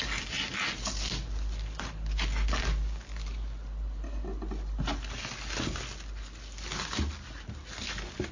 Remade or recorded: recorded